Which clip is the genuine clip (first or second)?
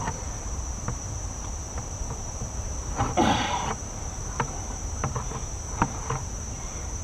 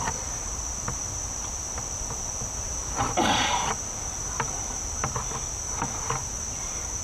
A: second